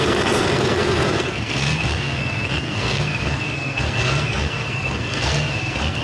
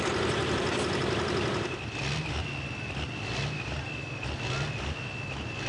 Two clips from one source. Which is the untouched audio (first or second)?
second